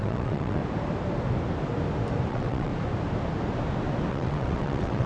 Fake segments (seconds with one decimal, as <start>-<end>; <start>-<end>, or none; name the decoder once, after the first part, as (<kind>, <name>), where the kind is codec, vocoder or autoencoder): 0.0-0.6 (vocoder, WaveNeXt); 2.3-2.7; 4.1-5.1